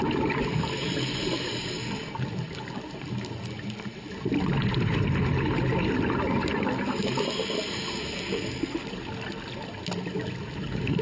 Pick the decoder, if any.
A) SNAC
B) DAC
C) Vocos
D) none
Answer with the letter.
D